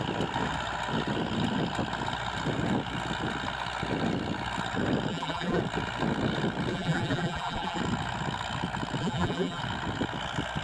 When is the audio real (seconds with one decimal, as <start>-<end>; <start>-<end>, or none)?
0.0-5.1; 5.6-6.7; 7.8-9.0; 9.6-10.6